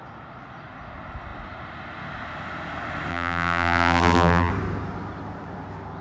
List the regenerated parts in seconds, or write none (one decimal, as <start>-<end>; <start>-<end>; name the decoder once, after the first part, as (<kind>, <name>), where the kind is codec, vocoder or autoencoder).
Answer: 3.1-4.5 (vocoder, BigVGAN v2)